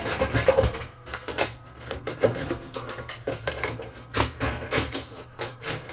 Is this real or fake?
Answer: fake